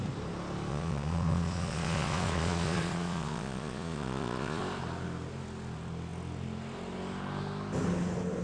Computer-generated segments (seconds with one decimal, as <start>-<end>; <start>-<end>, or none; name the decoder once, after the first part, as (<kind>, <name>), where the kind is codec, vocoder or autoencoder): 0.7-4.6 (vocoder, Vocos)